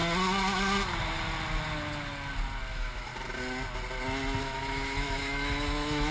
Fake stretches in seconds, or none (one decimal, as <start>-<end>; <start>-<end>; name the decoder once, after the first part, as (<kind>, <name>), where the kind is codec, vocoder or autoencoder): 2.7-3.1 (autoencoder, DAC-VAE); 4.4-6.1